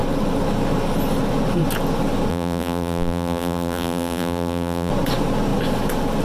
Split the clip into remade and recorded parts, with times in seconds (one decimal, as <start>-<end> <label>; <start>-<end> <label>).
0.0-2.3 recorded; 2.3-4.9 remade; 4.9-6.2 recorded